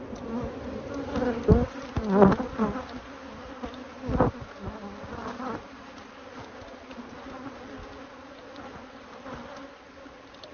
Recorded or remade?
recorded